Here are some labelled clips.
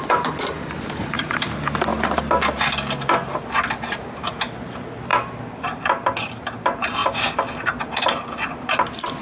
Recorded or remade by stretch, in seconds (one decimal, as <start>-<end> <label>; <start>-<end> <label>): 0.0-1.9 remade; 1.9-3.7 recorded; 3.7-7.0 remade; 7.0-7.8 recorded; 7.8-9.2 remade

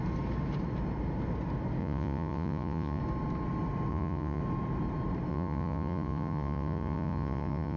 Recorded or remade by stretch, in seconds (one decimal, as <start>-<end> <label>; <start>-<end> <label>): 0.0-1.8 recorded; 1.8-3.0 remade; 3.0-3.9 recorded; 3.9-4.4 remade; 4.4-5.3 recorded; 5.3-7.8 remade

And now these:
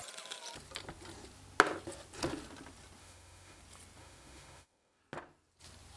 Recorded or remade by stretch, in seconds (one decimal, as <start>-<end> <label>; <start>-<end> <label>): 0.0-3.0 recorded; 3.0-3.6 remade; 3.6-4.0 recorded; 4.0-5.0 remade; 5.0-6.0 recorded